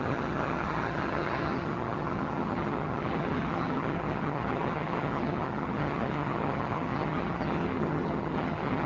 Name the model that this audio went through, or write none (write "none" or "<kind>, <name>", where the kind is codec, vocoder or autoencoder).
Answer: vocoder, HiFi-GAN